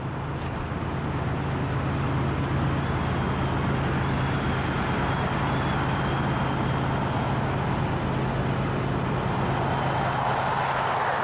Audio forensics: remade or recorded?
recorded